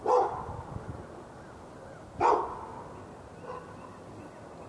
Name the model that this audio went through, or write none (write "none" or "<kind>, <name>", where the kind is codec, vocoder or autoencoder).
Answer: none